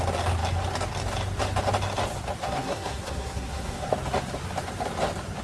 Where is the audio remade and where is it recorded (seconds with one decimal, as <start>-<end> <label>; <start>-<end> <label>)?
0.0-2.4 recorded; 2.4-3.9 remade; 3.9-5.4 recorded